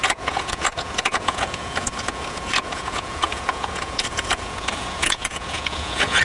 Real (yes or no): no